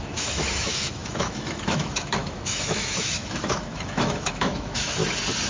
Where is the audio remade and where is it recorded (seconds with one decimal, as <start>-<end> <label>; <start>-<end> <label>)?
0.0-5.0 remade; 5.0-5.5 recorded